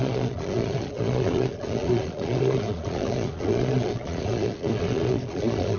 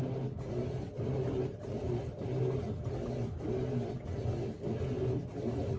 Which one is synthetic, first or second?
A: first